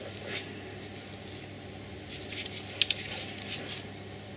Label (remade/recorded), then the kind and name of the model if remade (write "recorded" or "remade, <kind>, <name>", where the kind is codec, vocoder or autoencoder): recorded